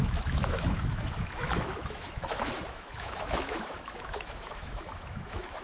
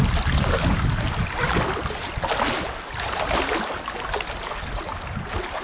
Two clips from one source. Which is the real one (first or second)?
second